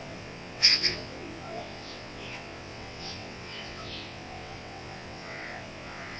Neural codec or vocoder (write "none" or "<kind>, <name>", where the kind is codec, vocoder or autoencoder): vocoder, WaveNeXt